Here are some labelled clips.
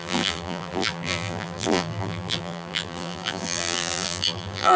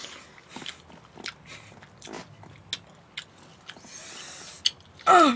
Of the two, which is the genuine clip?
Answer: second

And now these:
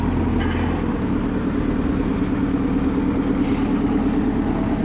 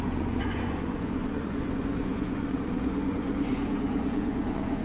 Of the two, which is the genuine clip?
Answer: first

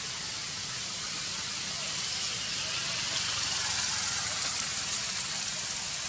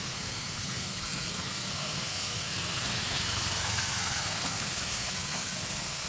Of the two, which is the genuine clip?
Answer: first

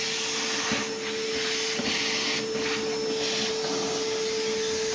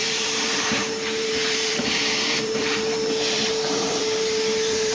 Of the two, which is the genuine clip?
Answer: first